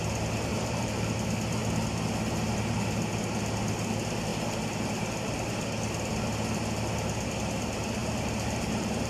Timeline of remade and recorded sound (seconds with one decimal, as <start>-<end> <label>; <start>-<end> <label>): 0.0-0.5 recorded; 0.5-1.1 remade; 1.1-8.0 recorded; 8.0-9.1 remade